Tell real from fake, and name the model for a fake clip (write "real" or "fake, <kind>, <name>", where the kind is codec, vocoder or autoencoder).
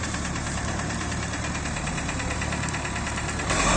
fake, vocoder, BigVGAN v2